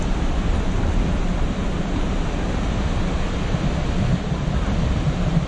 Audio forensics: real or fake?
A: fake